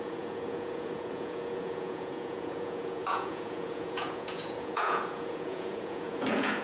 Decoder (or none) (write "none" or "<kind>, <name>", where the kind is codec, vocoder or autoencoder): vocoder, Vocos